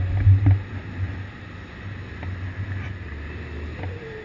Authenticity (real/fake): real